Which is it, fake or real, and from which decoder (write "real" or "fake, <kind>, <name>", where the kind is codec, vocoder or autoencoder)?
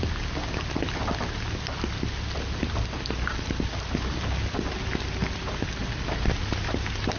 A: real